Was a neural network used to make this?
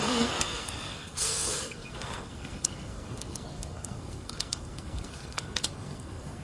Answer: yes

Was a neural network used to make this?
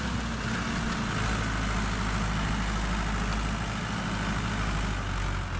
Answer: no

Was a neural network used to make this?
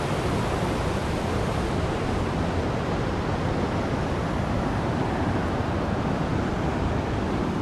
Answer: no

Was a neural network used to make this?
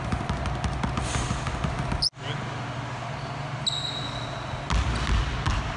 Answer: no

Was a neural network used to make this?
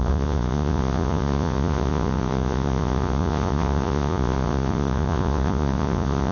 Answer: yes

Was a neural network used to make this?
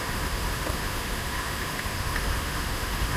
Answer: yes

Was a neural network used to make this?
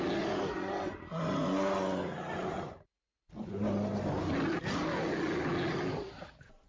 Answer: no